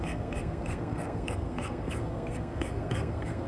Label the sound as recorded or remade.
remade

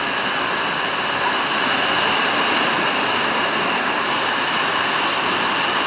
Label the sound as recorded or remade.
recorded